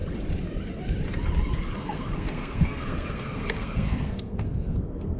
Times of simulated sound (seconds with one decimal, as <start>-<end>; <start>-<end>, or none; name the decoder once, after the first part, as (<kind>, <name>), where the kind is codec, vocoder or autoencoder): 1.8-5.2 (codec, SNAC)